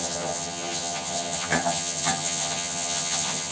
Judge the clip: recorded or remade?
remade